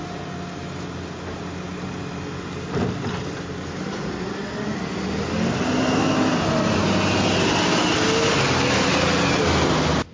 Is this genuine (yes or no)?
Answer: yes